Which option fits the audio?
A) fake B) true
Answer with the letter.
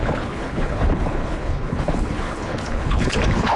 A